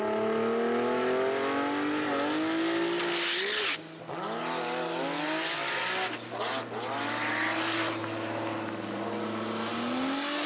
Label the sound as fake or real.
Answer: real